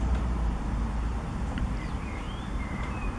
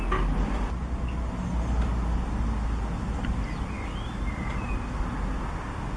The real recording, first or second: second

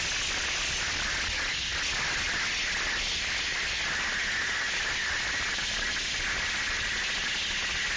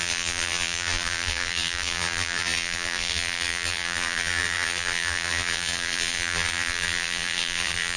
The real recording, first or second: first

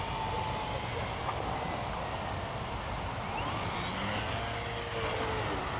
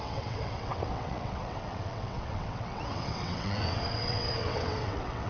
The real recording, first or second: first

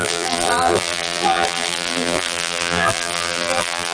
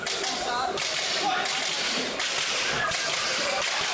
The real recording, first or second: second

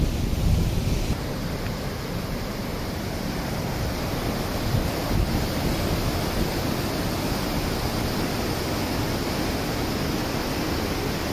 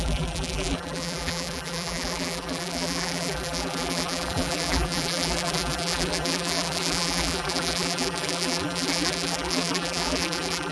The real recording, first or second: first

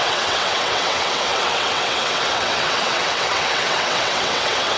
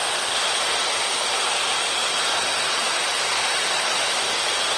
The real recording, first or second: second